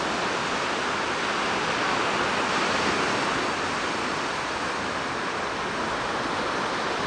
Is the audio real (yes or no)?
yes